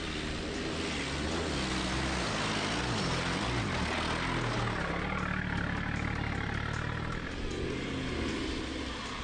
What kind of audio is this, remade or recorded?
recorded